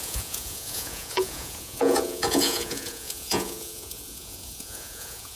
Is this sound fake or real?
fake